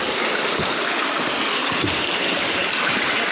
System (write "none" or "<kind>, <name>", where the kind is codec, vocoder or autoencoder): none